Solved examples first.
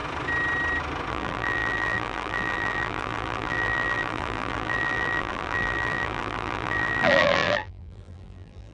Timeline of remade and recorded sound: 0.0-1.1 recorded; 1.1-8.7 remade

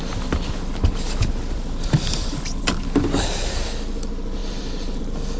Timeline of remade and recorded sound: 0.0-2.2 recorded; 2.2-3.3 remade; 3.3-4.4 recorded; 4.4-5.0 remade; 5.0-5.4 recorded

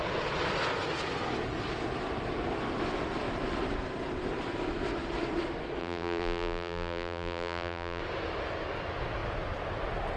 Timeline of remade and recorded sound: 0.0-5.8 recorded; 5.8-8.0 remade; 8.0-10.2 recorded

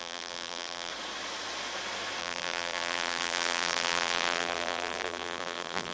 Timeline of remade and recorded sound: 0.0-0.9 remade; 0.9-2.2 recorded; 2.2-5.9 remade

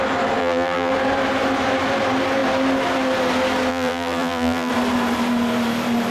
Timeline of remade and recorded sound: 0.0-0.4 recorded; 0.4-0.9 remade; 0.9-3.7 recorded; 3.7-4.7 remade; 4.7-6.1 recorded

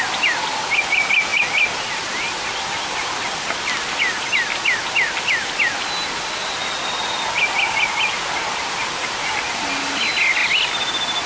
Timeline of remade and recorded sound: 0.0-11.3 recorded